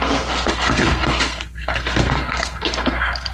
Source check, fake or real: fake